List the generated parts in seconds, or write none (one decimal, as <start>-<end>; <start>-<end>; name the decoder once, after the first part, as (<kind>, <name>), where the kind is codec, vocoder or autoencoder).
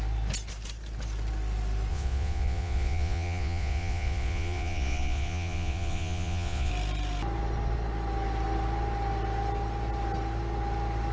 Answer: 1.9-6.7 (vocoder, Vocos)